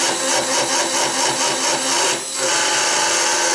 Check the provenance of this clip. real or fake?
real